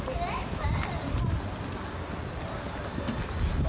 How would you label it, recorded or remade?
recorded